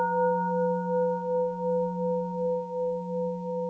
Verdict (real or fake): fake